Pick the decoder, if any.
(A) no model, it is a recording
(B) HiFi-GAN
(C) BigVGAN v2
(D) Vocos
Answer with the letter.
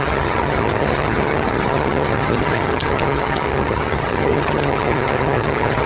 B